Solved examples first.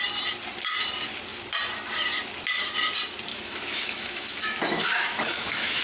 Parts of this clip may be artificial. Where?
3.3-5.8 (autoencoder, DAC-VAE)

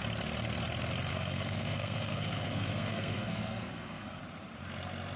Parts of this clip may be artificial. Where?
1.1-4.2 (codec, SNAC)

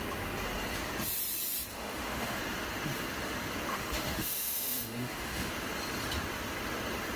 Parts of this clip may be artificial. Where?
1.7-2.4 (autoencoder, DAC-VAE); 3.7-5.5

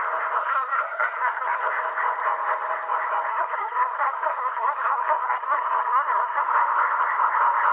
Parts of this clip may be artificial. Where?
0.4-1.6 (codec, SNAC); 3.3-6.4

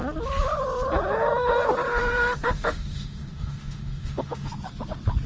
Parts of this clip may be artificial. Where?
2.0-4.5 (autoencoder, DAC-VAE)